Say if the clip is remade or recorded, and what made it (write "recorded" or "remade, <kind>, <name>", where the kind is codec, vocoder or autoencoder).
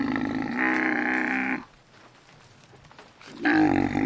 recorded